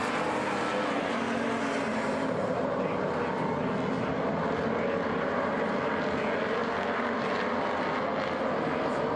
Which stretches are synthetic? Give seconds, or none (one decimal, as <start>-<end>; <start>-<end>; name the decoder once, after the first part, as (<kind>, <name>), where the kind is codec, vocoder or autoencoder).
1.9-2.8 (vocoder, BigVGAN v2)